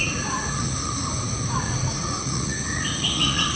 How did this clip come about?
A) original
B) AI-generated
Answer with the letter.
B